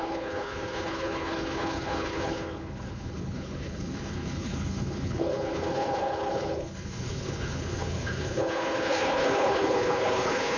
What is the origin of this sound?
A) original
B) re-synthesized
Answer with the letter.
B